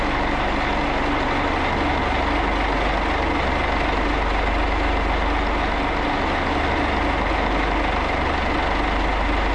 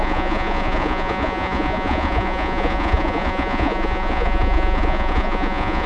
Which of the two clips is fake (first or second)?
second